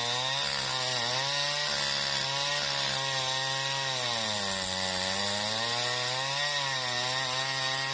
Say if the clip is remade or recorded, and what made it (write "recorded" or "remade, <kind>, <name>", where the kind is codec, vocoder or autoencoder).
recorded